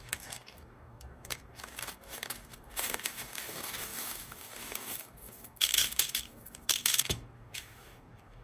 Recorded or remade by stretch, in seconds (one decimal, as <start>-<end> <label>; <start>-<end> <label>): 0.0-8.4 remade